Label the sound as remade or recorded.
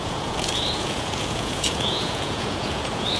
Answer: remade